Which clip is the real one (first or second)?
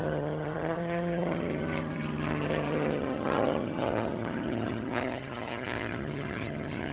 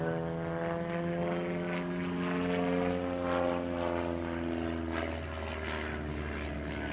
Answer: second